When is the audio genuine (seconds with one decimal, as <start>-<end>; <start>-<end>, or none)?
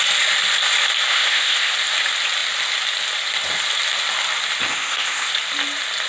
0.0-1.1; 1.7-4.7; 5.3-6.1